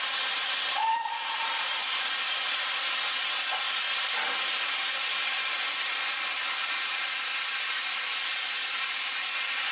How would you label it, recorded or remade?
recorded